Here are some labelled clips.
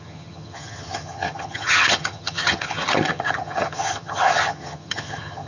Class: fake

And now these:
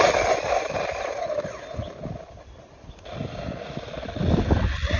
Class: real